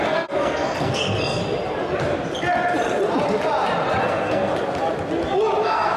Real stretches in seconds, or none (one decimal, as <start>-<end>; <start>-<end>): 1.4-4.0; 4.5-5.6